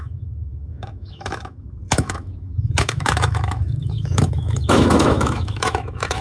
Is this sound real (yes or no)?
no